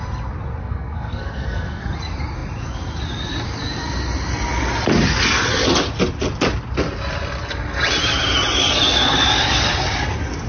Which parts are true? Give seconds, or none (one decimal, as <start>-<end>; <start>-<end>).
0.0-0.6; 1.9-10.5